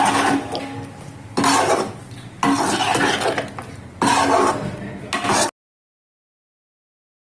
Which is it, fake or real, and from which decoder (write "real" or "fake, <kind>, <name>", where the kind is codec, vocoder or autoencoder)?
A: real